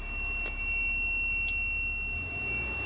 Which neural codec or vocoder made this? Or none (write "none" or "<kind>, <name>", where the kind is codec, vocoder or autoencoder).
none